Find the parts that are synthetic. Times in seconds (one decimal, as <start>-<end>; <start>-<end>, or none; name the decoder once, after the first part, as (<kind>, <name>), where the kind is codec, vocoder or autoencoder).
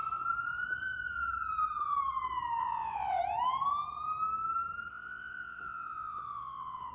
2.6-3.2 (vocoder, WaveNeXt); 4.9-6.9